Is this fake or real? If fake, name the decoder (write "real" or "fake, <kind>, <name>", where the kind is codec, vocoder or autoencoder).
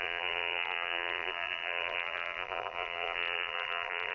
fake, vocoder, BigVGAN v2